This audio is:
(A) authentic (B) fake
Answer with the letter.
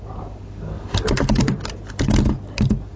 A